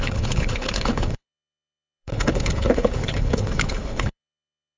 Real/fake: fake